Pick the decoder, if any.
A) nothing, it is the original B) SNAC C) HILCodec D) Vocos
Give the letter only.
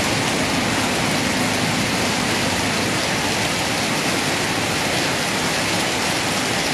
A